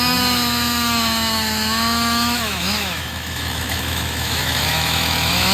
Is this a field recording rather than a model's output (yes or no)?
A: no